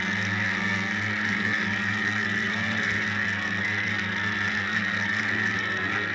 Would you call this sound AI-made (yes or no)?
yes